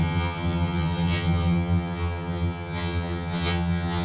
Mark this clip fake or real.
fake